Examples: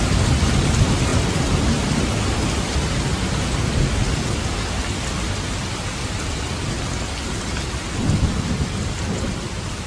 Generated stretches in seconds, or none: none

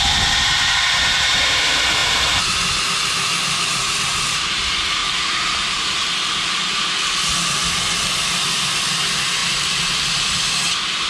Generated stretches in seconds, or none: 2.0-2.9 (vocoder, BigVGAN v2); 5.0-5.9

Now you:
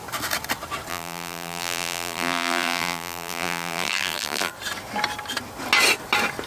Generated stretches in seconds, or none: 0.9-4.5 (vocoder, BigVGAN v2)